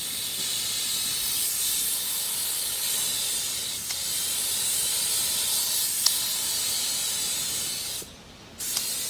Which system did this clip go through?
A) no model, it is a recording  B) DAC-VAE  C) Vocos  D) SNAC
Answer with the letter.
A